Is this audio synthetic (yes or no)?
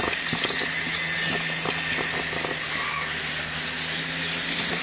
no